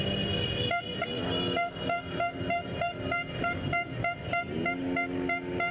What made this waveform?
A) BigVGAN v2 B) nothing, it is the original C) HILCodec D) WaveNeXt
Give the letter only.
B